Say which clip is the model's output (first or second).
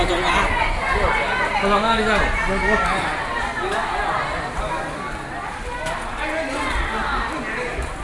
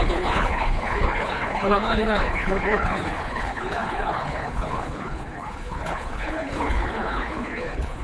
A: second